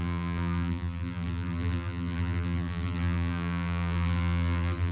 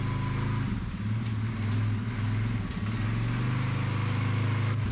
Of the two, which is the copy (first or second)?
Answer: first